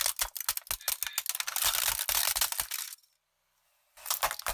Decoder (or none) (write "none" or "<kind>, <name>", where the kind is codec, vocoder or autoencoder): none